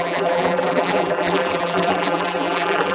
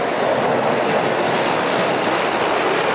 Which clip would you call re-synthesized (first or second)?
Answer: first